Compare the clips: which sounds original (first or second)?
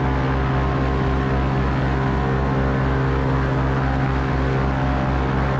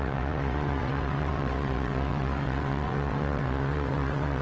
first